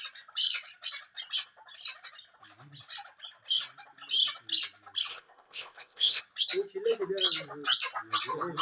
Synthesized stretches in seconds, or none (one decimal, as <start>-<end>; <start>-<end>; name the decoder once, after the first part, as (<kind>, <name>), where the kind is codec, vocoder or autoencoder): 5.1-6.2 (codec, ZipCodec)